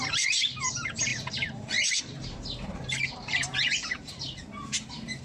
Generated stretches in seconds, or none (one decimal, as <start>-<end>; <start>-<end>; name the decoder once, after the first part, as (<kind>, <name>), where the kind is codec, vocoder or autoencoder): 0.0-5.2 (vocoder, BigVGAN v2)